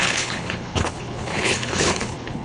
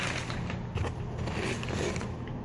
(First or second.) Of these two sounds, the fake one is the first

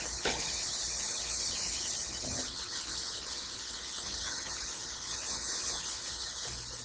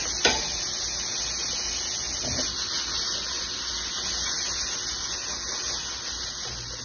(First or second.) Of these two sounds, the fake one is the first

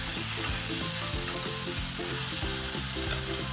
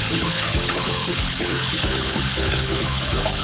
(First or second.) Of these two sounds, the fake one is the second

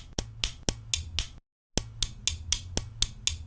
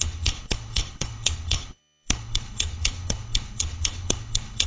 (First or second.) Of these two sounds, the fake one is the second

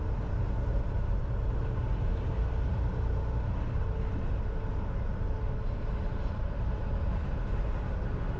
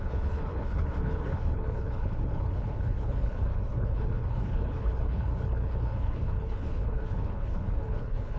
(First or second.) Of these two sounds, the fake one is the second